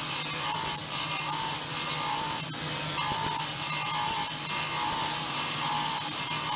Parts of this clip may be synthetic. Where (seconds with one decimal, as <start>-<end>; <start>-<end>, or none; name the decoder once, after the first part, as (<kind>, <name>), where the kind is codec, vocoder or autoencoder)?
none